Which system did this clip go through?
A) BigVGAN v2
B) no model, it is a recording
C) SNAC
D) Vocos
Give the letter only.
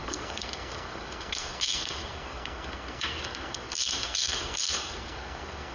C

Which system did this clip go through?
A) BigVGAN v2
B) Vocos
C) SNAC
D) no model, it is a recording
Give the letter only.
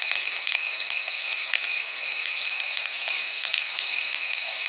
C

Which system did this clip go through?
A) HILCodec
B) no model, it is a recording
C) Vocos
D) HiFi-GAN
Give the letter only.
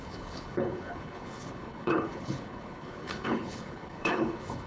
A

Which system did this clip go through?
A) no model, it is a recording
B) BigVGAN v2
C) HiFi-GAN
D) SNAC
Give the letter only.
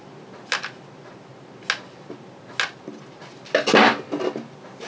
A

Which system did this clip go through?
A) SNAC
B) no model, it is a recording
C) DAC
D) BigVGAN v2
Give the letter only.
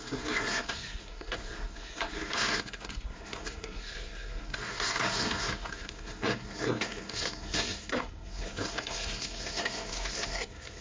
A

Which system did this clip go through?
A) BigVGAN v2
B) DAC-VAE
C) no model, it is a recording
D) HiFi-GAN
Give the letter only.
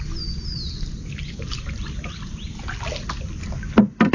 C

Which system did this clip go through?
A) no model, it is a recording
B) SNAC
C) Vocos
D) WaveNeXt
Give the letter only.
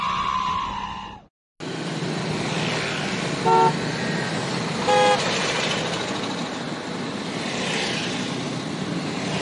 A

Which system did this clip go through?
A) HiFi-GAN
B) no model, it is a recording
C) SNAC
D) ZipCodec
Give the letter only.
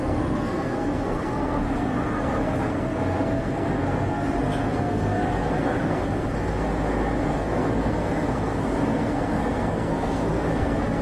C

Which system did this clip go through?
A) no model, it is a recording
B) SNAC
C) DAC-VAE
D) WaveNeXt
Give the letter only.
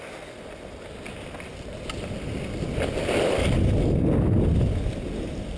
A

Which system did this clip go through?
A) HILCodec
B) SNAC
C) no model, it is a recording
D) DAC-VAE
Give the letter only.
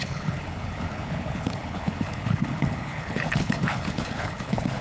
A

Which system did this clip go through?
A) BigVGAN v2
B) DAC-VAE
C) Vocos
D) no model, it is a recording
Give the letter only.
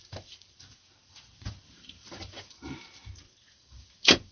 A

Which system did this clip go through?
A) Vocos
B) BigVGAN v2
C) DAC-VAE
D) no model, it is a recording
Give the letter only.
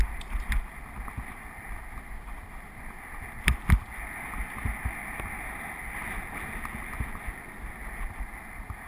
D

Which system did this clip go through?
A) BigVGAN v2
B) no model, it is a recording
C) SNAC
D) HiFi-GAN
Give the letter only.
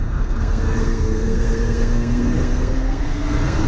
C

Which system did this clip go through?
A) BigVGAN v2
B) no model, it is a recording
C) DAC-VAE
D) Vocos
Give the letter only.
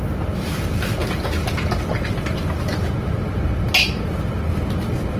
B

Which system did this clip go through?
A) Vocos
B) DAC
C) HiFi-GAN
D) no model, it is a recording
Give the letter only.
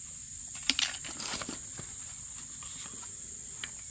D